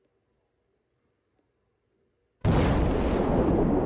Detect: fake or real real